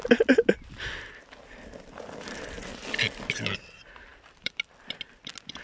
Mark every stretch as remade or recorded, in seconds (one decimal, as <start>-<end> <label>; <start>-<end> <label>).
0.0-4.1 recorded; 4.1-4.7 remade; 4.7-5.6 recorded